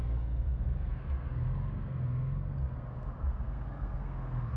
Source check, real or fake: fake